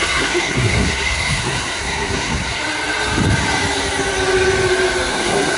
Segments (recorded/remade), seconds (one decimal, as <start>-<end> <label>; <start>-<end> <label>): 0.0-2.6 remade; 2.6-5.1 recorded; 5.1-5.6 remade